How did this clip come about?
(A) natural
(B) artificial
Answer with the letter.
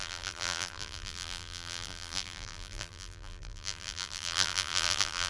B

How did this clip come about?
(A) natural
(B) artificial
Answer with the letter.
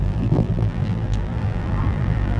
B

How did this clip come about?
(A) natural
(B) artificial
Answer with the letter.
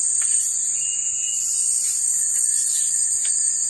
A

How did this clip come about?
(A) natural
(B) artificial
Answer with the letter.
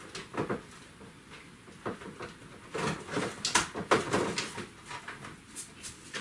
A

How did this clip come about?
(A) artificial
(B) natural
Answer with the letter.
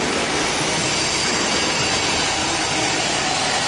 A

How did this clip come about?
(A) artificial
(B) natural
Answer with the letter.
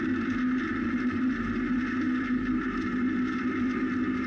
B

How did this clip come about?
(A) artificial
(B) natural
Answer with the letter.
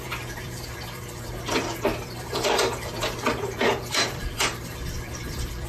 A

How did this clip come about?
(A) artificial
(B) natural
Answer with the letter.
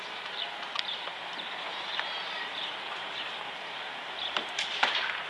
A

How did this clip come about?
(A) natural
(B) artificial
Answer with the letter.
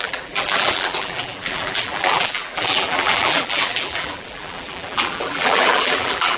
B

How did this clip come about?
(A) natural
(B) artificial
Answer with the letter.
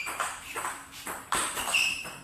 B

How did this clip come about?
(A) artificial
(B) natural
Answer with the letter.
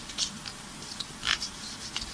B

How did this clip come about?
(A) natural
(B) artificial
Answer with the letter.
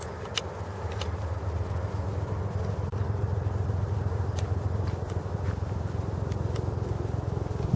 A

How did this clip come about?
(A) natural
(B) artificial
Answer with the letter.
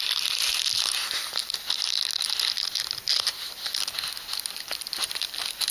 A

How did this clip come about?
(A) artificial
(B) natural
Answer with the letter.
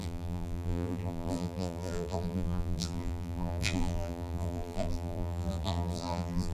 A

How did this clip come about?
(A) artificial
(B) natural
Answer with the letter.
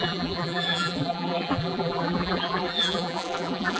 A